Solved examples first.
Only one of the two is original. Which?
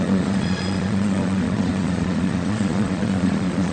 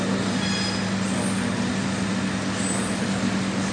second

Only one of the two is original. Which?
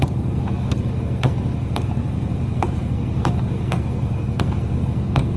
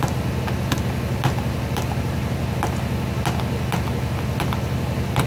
second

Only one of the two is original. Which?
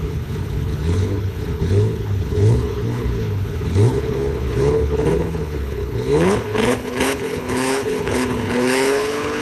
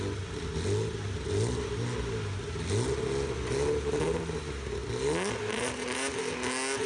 second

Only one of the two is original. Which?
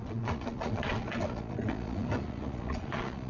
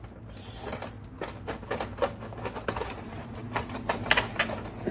second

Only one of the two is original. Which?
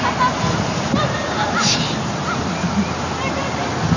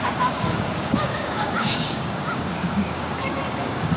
first